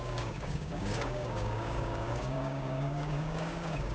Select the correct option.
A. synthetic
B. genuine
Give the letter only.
A